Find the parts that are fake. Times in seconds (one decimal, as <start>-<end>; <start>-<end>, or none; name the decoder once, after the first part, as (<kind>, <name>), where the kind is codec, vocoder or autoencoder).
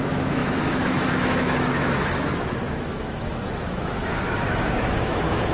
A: 0.0-5.5 (autoencoder, DAC-VAE)